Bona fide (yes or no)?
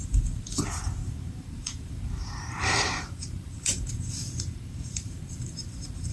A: no